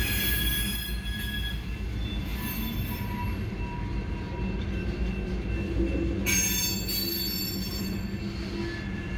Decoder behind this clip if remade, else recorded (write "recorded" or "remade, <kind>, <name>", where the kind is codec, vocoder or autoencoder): recorded